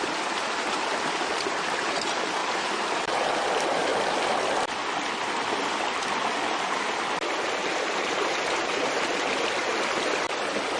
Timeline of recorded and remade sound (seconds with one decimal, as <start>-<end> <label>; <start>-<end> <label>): 0.0-2.4 recorded; 2.4-3.3 remade; 3.3-7.6 recorded; 7.6-9.1 remade; 9.1-10.8 recorded